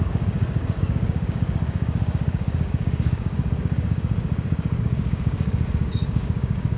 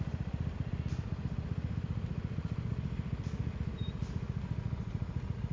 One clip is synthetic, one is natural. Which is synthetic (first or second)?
first